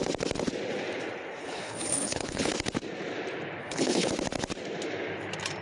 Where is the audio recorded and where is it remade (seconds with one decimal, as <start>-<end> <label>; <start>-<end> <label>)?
0.0-1.4 recorded; 1.4-2.5 remade; 2.5-3.6 recorded; 3.6-4.1 remade; 4.1-5.6 recorded